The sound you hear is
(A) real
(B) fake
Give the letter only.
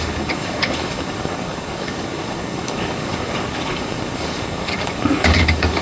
B